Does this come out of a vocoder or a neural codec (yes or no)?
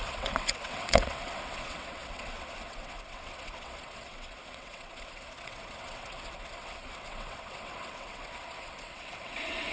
yes